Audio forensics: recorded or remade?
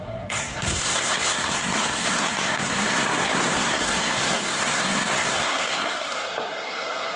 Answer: remade